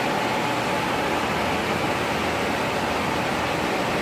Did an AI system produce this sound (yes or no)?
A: no